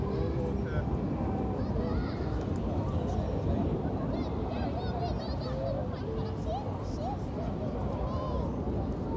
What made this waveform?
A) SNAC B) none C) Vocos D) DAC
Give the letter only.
B